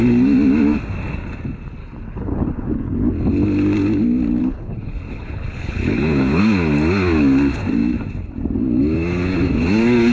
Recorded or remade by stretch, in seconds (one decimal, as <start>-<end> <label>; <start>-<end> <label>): 0.0-1.8 recorded; 1.8-3.1 remade; 3.1-4.4 recorded; 4.4-6.4 remade; 6.4-10.1 recorded